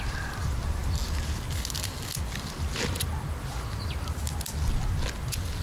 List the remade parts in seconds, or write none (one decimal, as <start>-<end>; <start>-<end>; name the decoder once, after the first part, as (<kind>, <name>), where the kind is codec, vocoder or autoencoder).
none